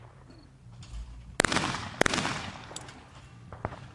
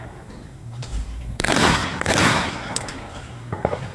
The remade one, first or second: second